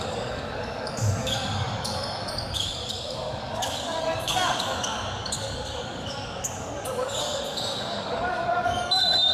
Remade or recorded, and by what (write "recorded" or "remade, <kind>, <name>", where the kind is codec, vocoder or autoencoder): remade, codec, DAC